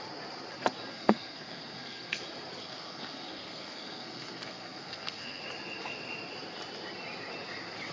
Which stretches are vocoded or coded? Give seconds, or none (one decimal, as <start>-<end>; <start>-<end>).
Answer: 0.9-2.2; 2.6-5.4